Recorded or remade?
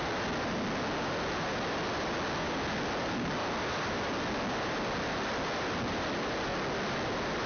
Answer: recorded